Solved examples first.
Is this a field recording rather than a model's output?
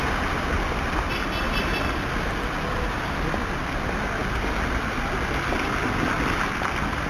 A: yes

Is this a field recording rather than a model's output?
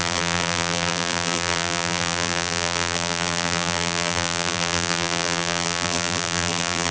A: no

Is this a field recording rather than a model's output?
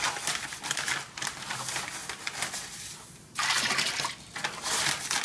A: yes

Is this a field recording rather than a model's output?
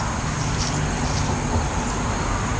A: yes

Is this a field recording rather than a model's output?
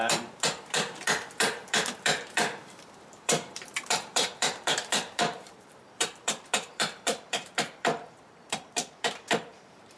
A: no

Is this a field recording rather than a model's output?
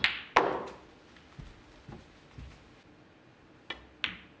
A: yes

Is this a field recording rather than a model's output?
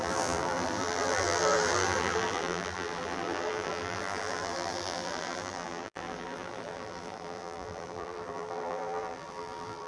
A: no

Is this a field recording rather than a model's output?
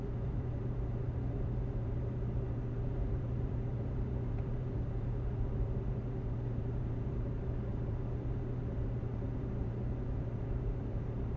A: no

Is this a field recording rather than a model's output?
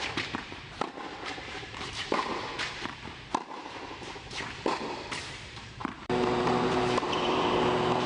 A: no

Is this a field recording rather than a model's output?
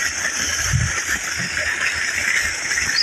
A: yes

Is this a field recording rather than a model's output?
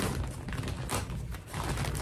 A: yes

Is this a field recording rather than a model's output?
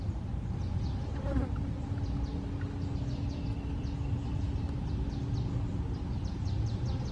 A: no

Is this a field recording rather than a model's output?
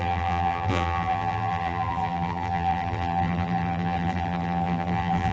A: no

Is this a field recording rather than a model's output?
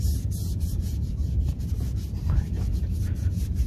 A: no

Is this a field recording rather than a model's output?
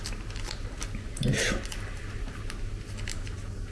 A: yes